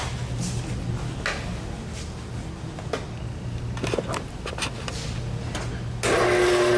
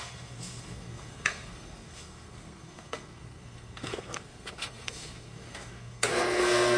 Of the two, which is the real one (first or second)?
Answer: first